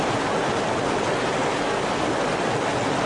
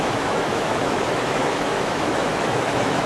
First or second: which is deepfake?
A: second